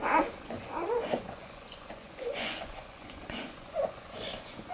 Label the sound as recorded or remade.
remade